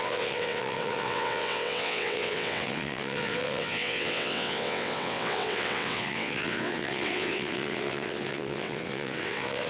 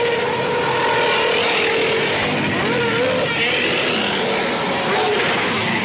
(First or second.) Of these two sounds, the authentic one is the second